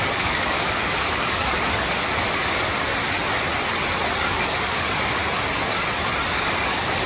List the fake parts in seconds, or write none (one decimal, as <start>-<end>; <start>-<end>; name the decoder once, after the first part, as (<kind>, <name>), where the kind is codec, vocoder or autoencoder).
0.0-2.9 (codec, DAC); 4.2-5.2; 6.3-7.1